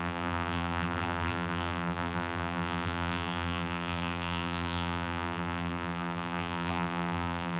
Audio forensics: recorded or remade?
remade